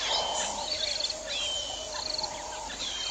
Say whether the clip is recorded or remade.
remade